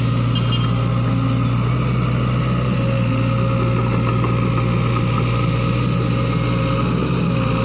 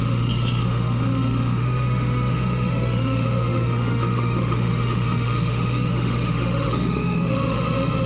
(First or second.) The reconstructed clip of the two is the second